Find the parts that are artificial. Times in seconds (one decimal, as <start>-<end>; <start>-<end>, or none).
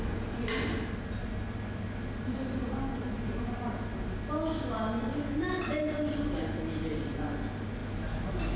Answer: none